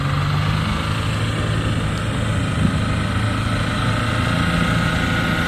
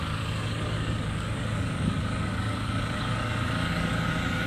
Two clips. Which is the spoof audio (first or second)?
second